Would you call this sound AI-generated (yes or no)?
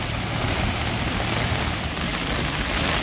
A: no